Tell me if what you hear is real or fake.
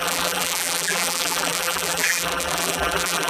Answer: fake